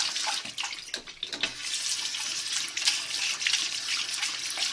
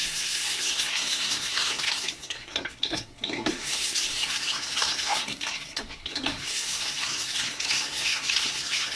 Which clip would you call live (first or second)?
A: first